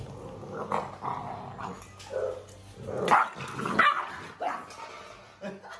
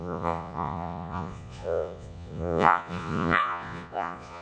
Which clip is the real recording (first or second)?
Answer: first